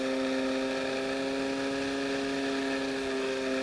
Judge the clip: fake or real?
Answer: real